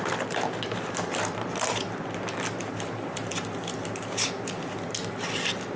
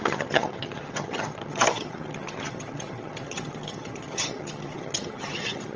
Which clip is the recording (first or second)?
first